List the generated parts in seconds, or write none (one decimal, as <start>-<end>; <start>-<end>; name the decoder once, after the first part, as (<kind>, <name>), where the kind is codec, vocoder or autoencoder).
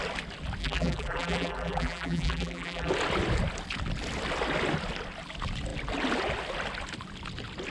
0.6-2.9 (vocoder, BigVGAN v2)